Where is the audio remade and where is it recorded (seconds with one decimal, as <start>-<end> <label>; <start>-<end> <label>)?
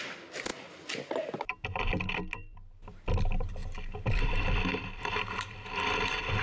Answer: 0.0-3.6 remade; 3.6-4.1 recorded; 4.1-6.4 remade